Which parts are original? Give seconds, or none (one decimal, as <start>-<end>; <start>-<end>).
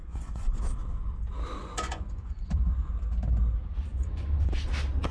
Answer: 0.5-1.6; 2.9-3.9; 4.5-5.1